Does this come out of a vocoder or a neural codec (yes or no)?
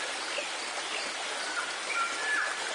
no